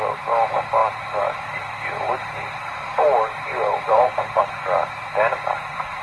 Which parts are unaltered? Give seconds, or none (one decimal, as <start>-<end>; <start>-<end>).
0.0-0.8; 4.4-6.0